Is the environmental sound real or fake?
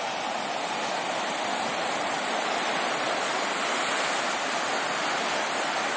real